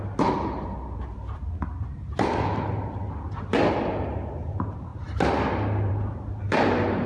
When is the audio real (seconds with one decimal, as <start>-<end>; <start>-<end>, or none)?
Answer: 0.0-7.1